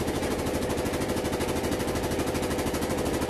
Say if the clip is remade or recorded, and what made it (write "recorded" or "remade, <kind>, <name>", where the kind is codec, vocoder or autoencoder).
remade, vocoder, BigVGAN v2